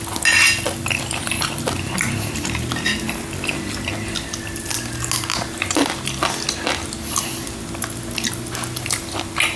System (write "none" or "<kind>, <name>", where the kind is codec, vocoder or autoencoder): none